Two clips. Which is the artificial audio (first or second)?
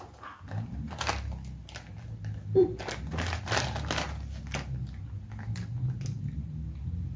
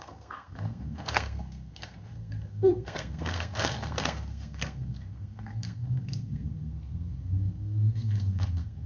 second